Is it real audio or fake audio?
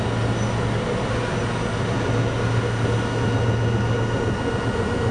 real